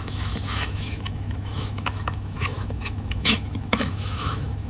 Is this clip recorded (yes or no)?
no